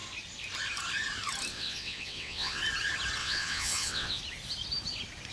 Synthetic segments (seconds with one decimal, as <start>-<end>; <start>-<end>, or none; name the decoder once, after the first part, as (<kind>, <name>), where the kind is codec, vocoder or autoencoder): 1.5-2.6 (vocoder, WaveNeXt); 3.2-4.2